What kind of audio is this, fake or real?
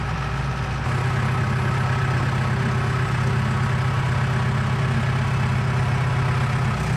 real